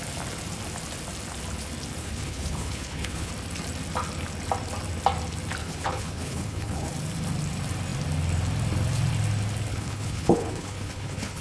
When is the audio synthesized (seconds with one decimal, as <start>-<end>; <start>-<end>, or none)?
2.0-3.3; 5.6-6.9; 9.7-11.4